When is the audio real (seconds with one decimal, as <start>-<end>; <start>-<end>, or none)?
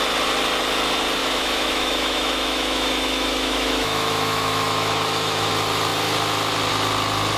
0.0-1.2; 5.5-7.4